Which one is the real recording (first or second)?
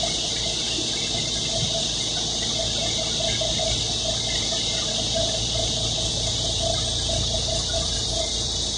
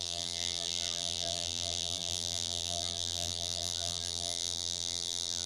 first